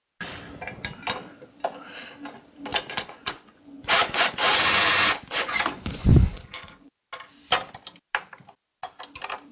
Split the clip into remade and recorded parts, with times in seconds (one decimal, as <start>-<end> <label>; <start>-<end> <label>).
0.0-2.7 recorded; 2.7-7.0 remade; 7.0-9.5 recorded